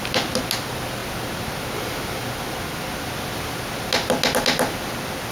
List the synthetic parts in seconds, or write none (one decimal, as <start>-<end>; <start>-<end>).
none